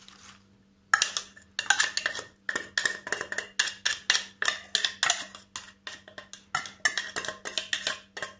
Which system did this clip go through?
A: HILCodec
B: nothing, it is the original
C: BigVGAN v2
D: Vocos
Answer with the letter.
B